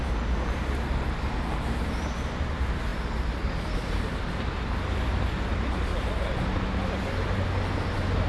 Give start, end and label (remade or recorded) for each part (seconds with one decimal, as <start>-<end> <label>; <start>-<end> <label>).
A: 0.0-8.3 recorded